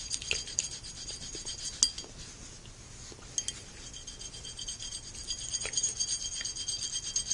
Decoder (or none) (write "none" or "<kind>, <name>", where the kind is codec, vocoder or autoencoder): none